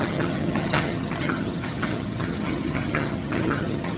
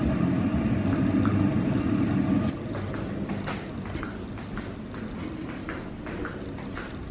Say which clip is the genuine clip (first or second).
second